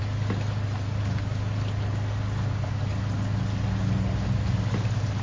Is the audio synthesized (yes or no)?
no